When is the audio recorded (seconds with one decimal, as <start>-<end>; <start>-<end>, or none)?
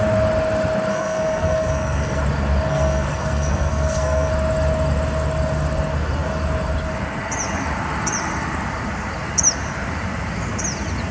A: 0.0-0.9; 2.2-2.7; 4.3-11.1